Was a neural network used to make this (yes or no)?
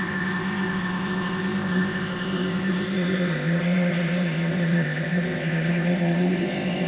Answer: yes